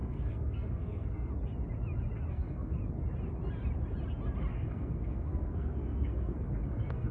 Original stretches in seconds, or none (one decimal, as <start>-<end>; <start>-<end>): 1.3-2.3; 2.8-4.5